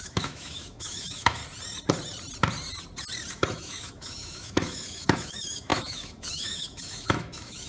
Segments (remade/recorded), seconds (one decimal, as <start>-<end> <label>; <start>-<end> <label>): 0.0-1.4 remade; 1.4-3.3 recorded; 3.3-7.7 remade